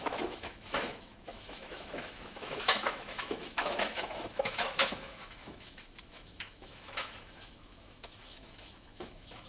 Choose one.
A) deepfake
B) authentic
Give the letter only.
A